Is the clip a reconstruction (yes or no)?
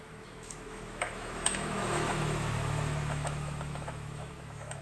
yes